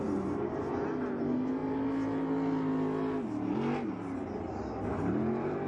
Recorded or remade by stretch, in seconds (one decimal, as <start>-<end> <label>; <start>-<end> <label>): 0.0-5.7 recorded